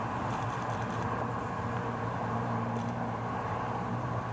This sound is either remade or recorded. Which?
remade